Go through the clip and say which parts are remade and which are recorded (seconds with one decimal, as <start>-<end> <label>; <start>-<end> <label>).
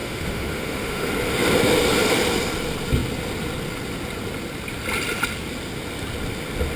0.0-1.1 remade; 1.1-6.8 recorded